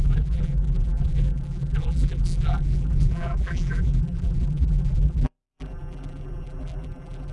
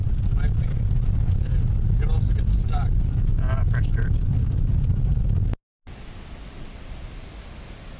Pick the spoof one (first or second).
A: first